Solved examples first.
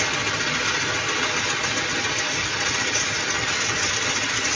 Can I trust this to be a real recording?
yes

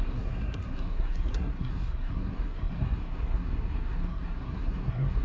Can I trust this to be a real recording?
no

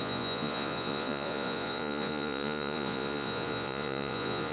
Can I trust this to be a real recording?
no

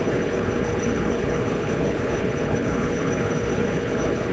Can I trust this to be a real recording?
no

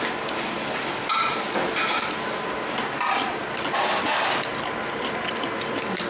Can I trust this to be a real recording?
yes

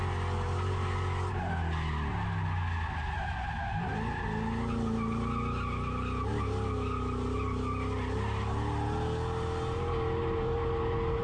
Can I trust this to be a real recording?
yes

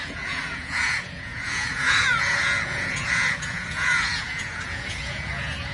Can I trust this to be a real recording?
no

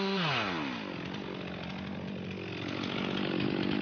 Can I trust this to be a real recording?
yes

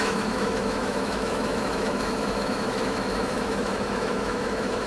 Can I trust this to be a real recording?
no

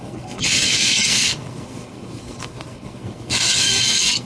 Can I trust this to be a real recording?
no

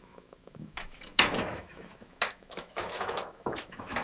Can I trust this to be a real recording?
no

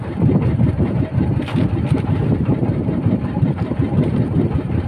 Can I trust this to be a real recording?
no